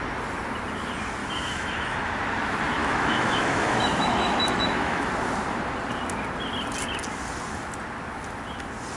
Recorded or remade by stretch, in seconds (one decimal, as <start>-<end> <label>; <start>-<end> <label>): 0.0-1.2 recorded; 1.2-2.1 remade; 2.1-2.8 recorded; 2.8-5.1 remade; 5.1-9.0 recorded